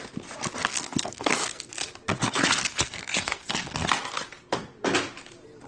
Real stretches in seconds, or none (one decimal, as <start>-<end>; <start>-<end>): 0.0-0.6; 1.7-2.2; 4.0-5.7